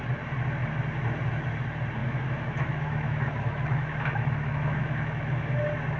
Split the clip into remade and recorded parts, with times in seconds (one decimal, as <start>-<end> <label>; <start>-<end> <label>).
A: 0.0-2.0 recorded; 2.0-5.6 remade; 5.6-6.0 recorded